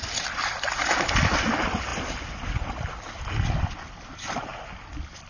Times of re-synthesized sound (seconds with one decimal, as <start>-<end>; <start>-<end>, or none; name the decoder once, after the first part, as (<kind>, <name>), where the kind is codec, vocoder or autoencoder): 0.0-4.5 (vocoder, BigVGAN v2)